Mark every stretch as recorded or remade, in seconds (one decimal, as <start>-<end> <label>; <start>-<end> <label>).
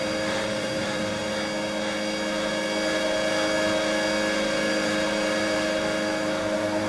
0.0-1.2 remade; 1.2-4.7 recorded; 4.7-6.9 remade